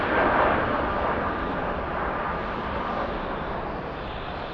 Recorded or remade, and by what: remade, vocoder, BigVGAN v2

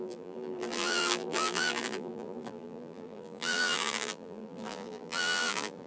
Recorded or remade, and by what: remade, vocoder, BigVGAN v2